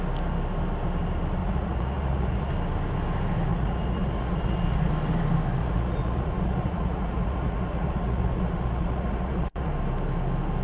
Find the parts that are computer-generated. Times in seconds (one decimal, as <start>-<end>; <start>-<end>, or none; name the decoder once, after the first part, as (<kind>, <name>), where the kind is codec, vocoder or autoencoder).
1.4-2.5 (vocoder, Vocos); 3.5-4.9; 5.6-9.7

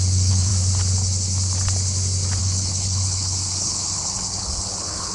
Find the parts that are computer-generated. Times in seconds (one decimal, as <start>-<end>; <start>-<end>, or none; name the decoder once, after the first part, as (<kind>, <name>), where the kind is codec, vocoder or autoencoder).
0.0-0.5 (codec, HILCodec); 2.4-5.1

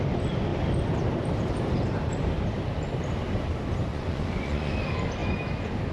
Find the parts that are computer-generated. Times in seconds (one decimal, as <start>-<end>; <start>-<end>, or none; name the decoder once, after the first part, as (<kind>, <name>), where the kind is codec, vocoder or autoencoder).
3.9-4.7 (vocoder, Vocos)

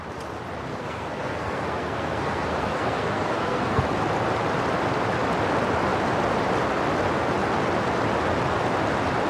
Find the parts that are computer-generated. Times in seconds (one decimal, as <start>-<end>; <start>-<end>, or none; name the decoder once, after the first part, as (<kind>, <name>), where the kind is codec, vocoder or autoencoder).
0.7-3.8 (codec, SNAC)

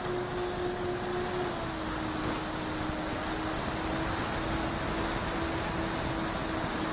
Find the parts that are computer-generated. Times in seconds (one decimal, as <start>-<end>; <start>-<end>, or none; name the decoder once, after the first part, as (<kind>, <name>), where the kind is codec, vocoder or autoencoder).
none

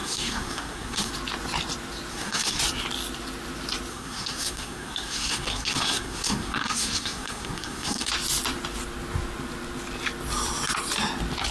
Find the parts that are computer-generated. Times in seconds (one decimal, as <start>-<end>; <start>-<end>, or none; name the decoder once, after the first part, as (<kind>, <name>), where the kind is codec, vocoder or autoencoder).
0.0-1.1 (codec, SNAC); 2.1-2.6; 3.9-8.1

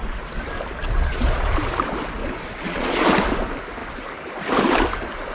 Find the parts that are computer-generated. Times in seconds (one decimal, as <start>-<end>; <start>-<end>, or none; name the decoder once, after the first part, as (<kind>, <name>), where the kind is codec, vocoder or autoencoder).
0.8-1.5 (vocoder, Vocos); 2.2-3.1

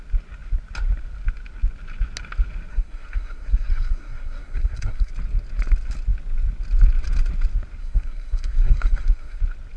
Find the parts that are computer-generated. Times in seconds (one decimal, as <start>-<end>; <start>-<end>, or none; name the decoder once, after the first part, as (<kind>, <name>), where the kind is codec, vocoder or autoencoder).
2.7-5.1 (codec, SNAC); 7.8-9.4